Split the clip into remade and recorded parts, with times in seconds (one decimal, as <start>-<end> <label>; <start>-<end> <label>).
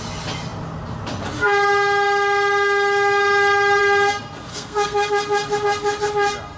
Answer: 0.0-4.5 recorded; 4.5-5.1 remade; 5.1-6.6 recorded